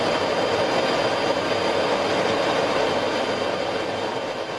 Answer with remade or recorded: recorded